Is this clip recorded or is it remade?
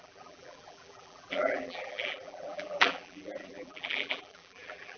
remade